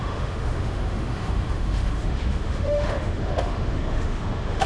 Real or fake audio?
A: fake